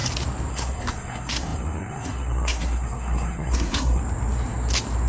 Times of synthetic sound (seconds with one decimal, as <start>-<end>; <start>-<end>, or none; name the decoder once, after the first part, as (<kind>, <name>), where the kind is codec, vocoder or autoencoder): 0.5-4.0 (codec, SNAC)